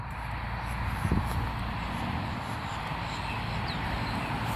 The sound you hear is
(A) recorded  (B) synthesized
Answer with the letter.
A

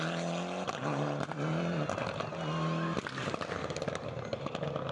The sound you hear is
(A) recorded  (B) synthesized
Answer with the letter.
A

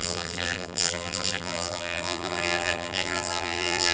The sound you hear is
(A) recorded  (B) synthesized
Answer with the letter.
B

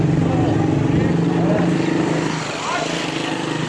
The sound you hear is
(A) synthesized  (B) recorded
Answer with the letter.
B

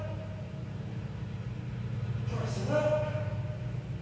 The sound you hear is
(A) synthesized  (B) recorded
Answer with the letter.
B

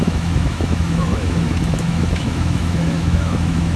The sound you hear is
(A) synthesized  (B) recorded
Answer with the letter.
A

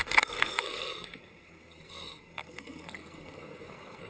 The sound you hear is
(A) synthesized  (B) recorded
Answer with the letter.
A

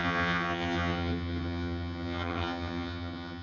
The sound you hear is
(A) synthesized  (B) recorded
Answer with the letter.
A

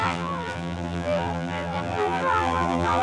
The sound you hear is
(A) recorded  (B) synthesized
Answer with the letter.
B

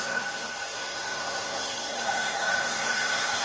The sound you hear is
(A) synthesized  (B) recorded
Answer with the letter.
A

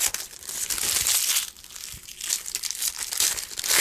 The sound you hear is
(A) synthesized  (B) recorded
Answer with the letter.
B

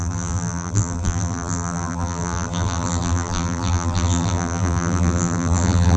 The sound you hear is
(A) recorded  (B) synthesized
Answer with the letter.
B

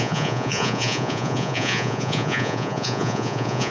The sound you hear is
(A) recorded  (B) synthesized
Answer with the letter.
B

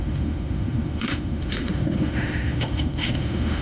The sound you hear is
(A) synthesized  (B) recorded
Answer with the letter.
A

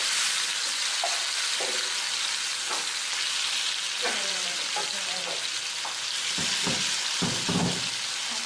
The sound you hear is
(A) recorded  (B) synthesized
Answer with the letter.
A